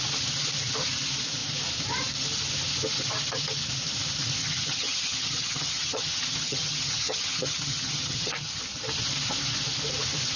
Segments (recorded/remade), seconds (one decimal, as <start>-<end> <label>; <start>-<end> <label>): 0.0-4.4 recorded; 4.4-8.6 remade; 8.6-10.4 recorded

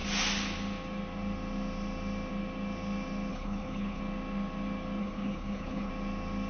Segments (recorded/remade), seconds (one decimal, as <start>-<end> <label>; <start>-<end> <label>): 0.0-3.3 recorded; 3.3-4.0 remade; 4.0-5.0 recorded; 5.0-5.9 remade; 5.9-6.5 recorded

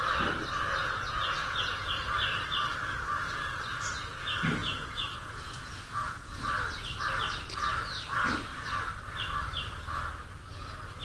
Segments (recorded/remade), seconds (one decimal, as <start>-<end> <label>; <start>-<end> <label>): 0.0-0.8 recorded; 0.8-1.9 remade; 1.9-4.6 recorded; 4.6-6.4 remade; 6.4-11.0 recorded

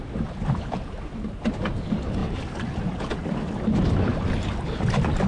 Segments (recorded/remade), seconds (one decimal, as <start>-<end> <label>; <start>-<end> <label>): 0.0-2.2 recorded; 2.2-3.1 remade; 3.1-5.3 recorded